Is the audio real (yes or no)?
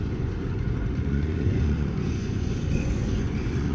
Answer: no